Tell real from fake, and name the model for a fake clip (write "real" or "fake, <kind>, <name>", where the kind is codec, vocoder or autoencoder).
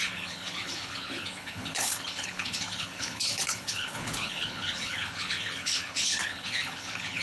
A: fake, codec, HILCodec